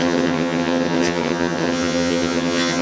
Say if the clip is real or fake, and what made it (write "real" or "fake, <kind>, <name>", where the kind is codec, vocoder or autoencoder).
fake, vocoder, HiFi-GAN